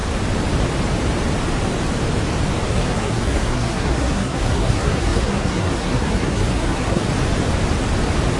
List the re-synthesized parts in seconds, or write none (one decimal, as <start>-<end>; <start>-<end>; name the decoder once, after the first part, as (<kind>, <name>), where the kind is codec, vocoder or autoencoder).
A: 2.7-7.0 (codec, SNAC)